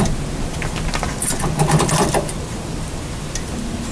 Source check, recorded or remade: recorded